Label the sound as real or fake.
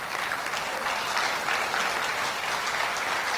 real